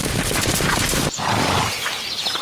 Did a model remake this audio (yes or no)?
yes